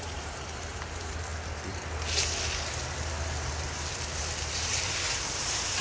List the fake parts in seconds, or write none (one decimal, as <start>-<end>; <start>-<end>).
0.0-1.3; 4.5-5.8